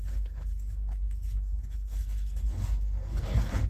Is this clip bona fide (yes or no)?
no